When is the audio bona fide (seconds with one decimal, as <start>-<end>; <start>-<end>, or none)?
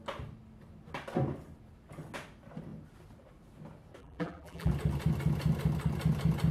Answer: 0.0-4.0; 4.7-6.5